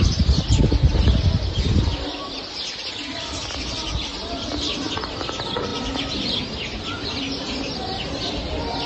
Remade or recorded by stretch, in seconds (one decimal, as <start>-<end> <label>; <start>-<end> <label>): 0.0-8.9 recorded